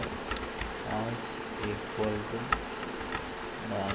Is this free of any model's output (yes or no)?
yes